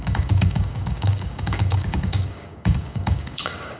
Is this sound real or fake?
fake